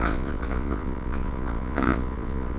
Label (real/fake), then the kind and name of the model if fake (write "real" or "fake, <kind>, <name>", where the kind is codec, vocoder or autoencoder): fake, vocoder, Vocos